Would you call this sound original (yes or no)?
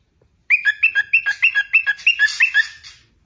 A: yes